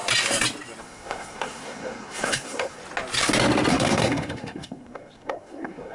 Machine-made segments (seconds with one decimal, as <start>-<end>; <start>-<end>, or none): 0.8-2.8; 3.7-5.9